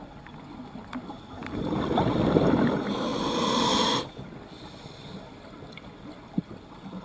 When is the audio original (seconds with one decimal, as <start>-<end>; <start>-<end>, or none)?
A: 0.0-7.0